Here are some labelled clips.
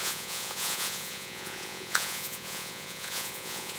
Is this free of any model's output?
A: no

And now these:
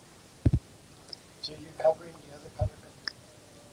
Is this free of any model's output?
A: yes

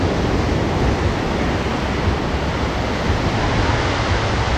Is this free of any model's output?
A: yes